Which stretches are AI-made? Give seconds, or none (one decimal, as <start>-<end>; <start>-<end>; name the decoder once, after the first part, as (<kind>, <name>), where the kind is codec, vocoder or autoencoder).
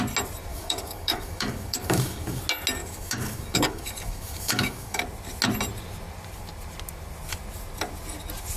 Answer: 0.5-2.4 (codec, DAC); 2.8-5.0